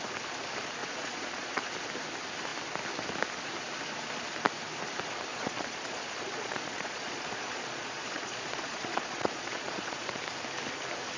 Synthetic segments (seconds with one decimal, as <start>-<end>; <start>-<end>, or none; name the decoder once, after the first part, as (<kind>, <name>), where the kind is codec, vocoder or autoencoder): 0.8-1.6 (vocoder, Vocos); 5.3-10.2